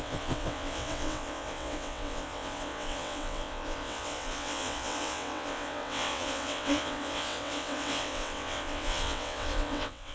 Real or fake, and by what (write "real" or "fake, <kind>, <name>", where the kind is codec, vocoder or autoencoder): fake, vocoder, WaveNeXt